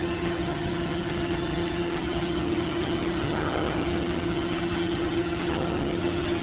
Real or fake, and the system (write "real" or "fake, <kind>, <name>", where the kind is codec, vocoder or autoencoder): fake, vocoder, HiFi-GAN